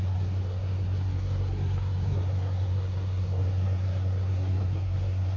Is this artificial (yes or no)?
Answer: yes